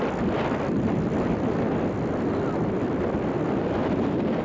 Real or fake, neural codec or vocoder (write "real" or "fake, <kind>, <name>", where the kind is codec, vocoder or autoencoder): fake, vocoder, BigVGAN v2